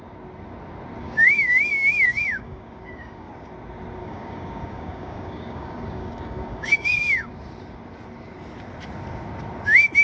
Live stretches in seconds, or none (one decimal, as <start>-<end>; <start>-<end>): 0.0-1.0; 3.3-4.0; 7.3-10.0